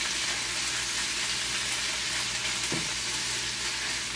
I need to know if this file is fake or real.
real